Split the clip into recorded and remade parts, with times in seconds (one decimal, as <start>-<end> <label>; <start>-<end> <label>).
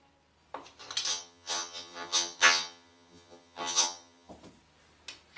0.0-1.1 recorded; 1.1-4.3 remade; 4.3-5.4 recorded